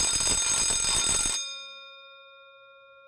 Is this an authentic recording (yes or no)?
yes